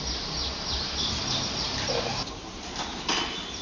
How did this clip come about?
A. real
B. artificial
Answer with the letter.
A